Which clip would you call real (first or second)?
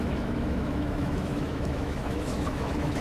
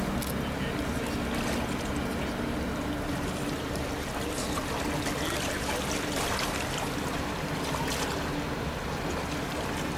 second